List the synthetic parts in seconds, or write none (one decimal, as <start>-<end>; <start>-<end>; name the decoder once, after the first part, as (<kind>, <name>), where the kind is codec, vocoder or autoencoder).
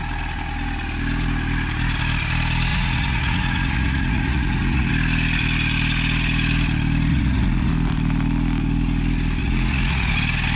2.7-4.9 (vocoder, Vocos); 7.1-7.7; 9.4-10.1